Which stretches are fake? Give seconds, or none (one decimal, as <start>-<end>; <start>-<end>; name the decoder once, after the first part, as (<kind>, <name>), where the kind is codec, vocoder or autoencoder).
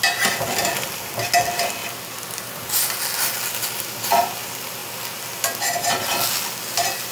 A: none